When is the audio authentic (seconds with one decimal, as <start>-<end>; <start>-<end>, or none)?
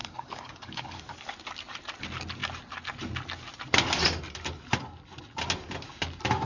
1.3-6.5